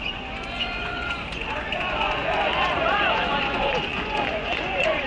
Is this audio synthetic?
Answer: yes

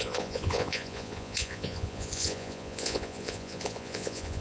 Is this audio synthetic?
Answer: yes